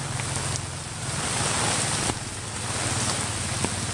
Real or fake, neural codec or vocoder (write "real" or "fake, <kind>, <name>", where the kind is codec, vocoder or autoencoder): real